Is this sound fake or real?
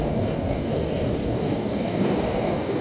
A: fake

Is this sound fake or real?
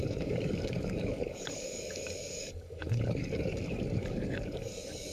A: fake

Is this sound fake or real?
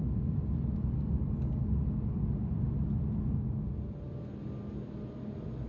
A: real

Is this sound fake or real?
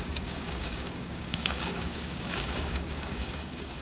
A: fake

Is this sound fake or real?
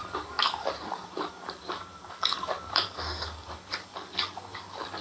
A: fake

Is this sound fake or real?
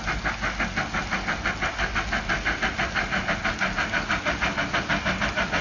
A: real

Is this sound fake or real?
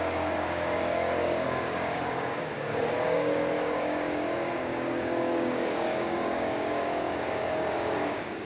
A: fake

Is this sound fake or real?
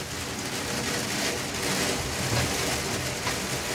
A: real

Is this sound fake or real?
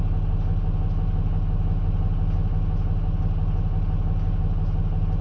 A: real